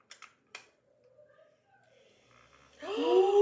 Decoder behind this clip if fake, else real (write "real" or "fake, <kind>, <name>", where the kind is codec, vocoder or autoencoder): real